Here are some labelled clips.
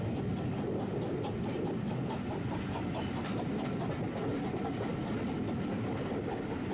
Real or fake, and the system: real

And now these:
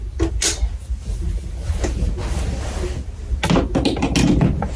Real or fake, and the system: real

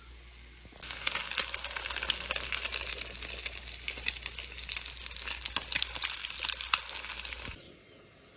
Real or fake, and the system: real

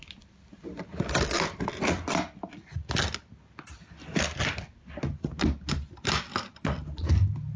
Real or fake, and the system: real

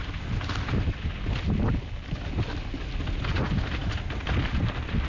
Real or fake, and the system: real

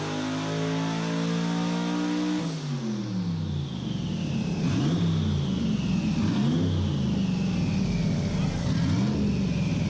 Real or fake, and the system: real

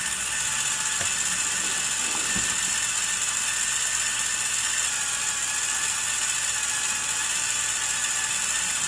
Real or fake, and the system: real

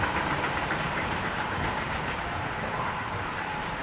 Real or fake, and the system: fake, vocoder, BigVGAN v2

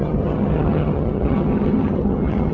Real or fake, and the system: fake, vocoder, HiFi-GAN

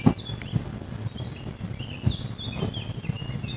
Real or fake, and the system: real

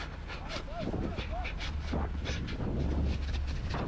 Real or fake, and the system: real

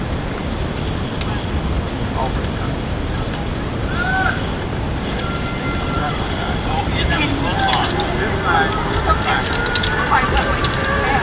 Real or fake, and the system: real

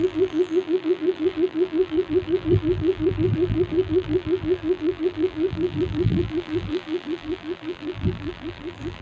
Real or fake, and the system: fake, vocoder, BigVGAN v2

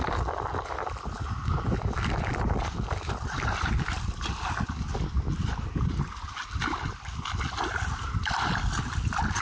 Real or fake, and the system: real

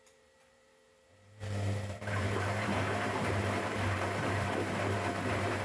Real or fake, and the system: fake, vocoder, BigVGAN v2